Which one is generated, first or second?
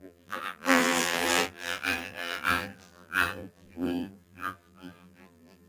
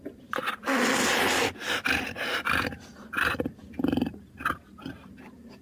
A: first